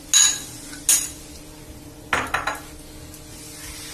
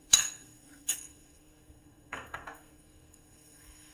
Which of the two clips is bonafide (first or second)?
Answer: first